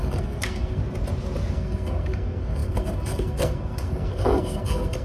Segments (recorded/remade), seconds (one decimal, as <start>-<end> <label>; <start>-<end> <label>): 0.0-0.8 remade; 0.8-1.5 recorded; 1.5-5.0 remade